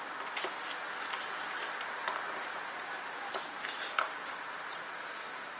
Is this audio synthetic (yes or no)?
no